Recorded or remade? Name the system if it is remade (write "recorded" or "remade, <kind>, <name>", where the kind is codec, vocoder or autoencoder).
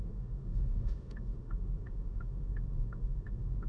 remade, autoencoder, DAC-VAE